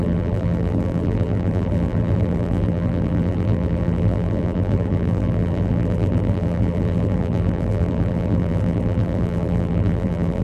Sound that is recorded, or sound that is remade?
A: remade